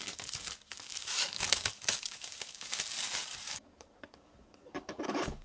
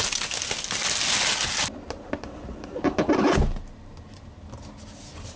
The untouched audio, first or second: second